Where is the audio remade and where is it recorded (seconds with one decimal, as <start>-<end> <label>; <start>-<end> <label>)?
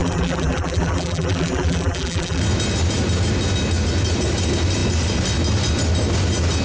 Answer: 0.0-2.4 remade; 2.4-6.6 recorded